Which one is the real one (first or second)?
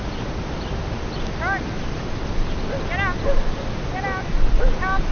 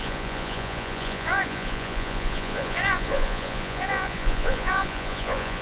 first